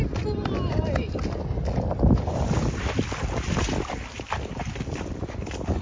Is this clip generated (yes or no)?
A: no